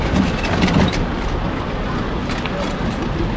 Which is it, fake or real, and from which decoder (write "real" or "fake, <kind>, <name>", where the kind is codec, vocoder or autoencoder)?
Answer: real